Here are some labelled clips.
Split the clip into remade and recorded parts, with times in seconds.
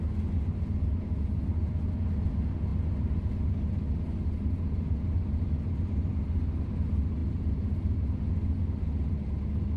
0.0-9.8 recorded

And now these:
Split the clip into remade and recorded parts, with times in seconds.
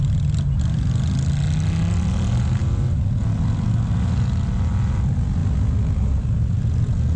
0.0-7.2 recorded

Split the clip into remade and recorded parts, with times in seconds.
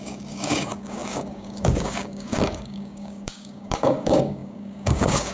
0.0-5.3 remade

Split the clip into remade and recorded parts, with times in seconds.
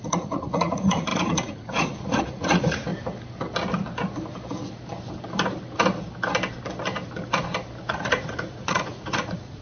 0.0-2.9 remade; 2.9-7.9 recorded; 7.9-9.6 remade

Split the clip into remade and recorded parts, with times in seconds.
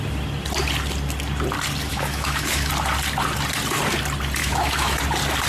0.0-1.9 recorded; 1.9-2.7 remade; 2.7-4.4 recorded; 4.4-5.0 remade; 5.0-5.5 recorded